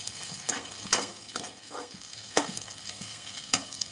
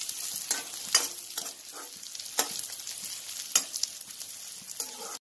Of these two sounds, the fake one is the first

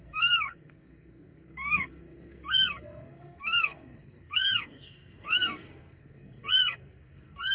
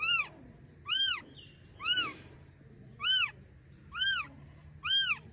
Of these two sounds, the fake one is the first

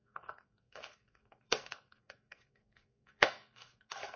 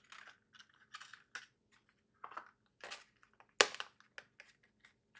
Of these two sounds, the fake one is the first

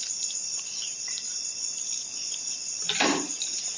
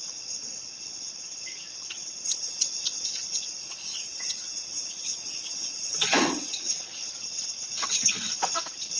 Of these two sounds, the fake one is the second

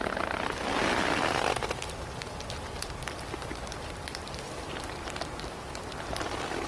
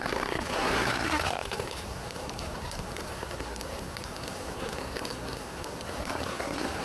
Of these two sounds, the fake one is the second